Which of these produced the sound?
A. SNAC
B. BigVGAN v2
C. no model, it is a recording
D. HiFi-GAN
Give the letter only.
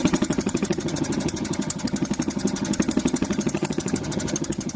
D